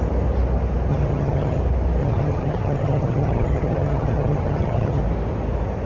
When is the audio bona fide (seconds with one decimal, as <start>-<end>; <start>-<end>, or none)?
0.0-0.9; 1.6-2.0; 5.0-5.9